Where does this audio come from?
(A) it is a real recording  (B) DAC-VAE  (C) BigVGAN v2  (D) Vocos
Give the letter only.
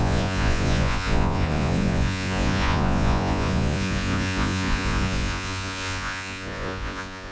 D